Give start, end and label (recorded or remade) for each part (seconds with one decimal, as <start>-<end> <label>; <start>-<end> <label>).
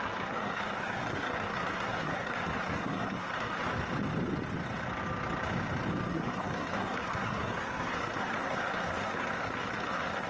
0.0-3.6 remade; 3.6-6.1 recorded; 6.1-10.3 remade